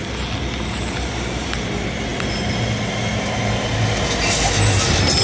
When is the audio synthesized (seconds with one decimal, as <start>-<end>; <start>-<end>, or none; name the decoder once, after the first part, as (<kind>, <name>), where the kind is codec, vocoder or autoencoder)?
none